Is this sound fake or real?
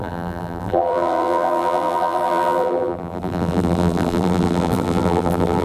fake